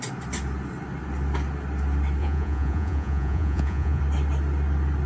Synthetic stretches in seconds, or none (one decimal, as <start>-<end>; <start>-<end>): 2.2-4.0